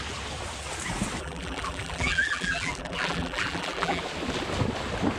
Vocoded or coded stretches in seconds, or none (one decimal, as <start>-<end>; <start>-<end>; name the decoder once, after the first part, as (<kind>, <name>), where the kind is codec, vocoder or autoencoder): 1.2-4.0 (vocoder, BigVGAN v2)